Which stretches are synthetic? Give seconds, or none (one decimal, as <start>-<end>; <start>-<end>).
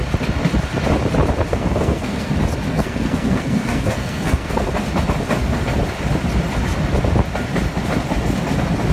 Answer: 1.5-2.3; 2.7-4.7